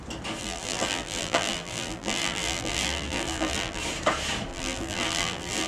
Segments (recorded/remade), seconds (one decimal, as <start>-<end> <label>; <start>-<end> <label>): 0.0-0.4 recorded; 0.4-3.8 remade; 3.8-4.5 recorded; 4.5-5.7 remade